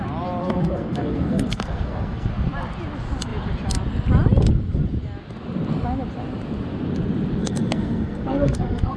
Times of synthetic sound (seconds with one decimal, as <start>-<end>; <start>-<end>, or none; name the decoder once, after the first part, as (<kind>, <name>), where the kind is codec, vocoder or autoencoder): 0.4-2.3 (codec, SNAC); 7.4-9.0